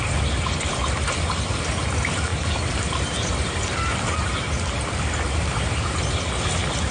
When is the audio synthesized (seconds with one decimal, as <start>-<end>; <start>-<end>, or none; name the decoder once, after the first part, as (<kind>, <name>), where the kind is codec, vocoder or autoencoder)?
none